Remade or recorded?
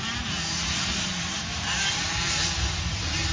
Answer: remade